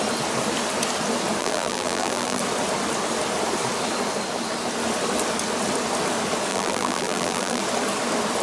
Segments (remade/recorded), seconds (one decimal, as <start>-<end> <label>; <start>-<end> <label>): 0.0-1.4 recorded; 1.4-2.4 remade; 2.4-6.5 recorded; 6.5-7.6 remade; 7.6-8.4 recorded